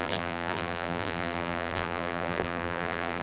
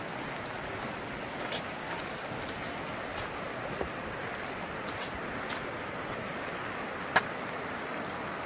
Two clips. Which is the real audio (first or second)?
second